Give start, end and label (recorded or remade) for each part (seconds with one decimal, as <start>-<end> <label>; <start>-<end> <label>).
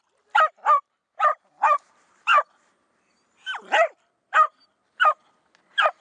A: 0.0-6.0 recorded